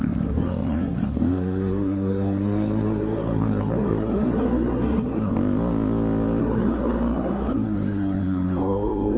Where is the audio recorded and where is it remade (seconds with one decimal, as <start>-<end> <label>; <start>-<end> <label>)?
0.0-5.3 remade; 5.3-6.4 recorded; 6.4-9.2 remade